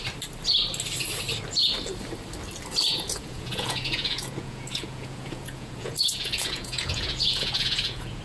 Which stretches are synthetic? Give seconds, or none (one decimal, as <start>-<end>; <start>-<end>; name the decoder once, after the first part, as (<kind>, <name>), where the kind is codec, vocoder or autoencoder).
2.9-8.2 (vocoder, Vocos)